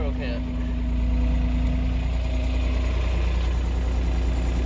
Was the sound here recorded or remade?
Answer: recorded